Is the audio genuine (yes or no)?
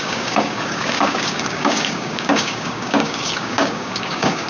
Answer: no